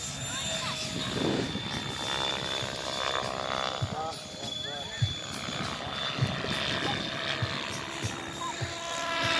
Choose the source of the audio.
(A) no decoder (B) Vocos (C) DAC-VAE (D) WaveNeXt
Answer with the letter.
A